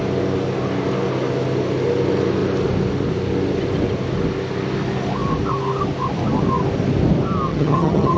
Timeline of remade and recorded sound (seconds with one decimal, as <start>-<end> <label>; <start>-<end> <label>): 0.0-7.5 recorded; 7.5-8.2 remade